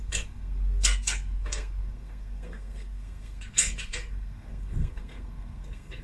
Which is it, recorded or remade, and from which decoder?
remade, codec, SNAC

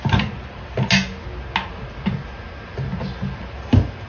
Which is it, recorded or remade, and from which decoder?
recorded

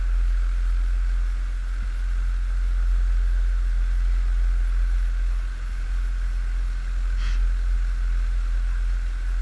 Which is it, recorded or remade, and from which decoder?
recorded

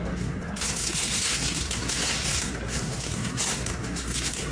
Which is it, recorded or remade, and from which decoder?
remade, codec, SNAC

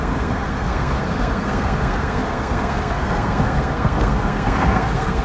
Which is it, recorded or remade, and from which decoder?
remade, codec, SNAC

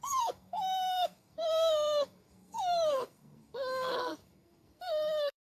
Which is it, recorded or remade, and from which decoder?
remade, codec, SNAC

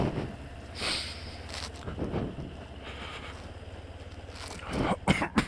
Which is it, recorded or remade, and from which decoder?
recorded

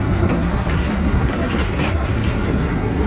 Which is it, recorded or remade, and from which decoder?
remade, codec, SNAC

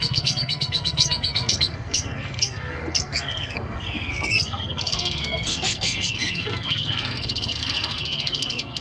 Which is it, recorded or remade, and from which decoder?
remade, codec, SNAC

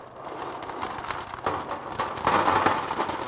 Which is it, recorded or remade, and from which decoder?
recorded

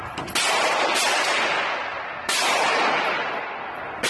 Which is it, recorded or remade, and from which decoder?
recorded